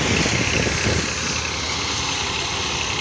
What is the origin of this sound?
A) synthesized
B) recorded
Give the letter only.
B